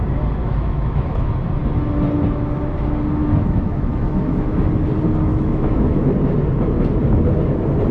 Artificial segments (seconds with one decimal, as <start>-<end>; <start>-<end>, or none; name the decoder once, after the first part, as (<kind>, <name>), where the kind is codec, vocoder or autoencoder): 0.4-1.2 (autoencoder, DAC-VAE); 3.2-4.7; 5.3-6.1

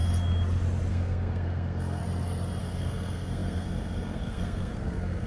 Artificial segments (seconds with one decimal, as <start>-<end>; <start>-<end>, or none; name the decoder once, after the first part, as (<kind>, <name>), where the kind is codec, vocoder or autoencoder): 0.9-2.0 (codec, SNAC); 2.6-5.3

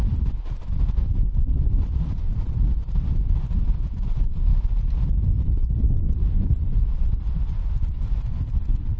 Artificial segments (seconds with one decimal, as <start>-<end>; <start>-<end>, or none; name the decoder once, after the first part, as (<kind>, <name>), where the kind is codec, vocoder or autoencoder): 1.1-2.0 (vocoder, BigVGAN v2); 4.5-7.6

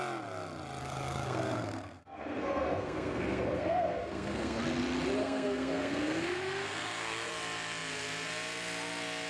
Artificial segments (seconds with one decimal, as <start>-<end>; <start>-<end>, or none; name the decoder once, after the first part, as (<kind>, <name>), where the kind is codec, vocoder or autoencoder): 0.8-4.6 (codec, SNAC); 5.2-7.3